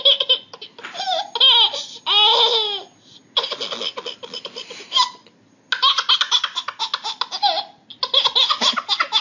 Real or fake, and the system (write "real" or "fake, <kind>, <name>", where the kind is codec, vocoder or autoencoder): real